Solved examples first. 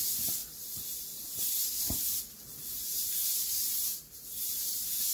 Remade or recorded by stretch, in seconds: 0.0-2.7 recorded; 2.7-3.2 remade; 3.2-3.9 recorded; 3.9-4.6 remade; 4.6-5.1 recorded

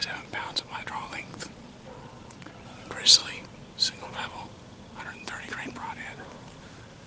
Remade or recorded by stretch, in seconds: 0.0-0.9 remade; 0.9-1.3 recorded; 1.3-2.5 remade; 2.5-7.1 recorded

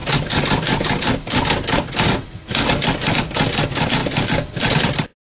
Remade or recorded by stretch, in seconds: 0.0-5.3 recorded

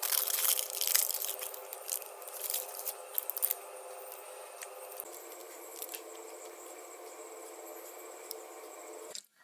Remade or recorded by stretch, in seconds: 0.0-1.7 recorded; 1.7-2.9 remade; 2.9-5.4 recorded; 5.4-6.0 remade; 6.0-9.4 recorded

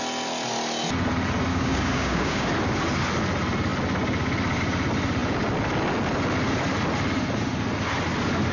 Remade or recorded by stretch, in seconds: 0.0-1.5 recorded; 1.5-2.5 remade; 2.5-8.5 recorded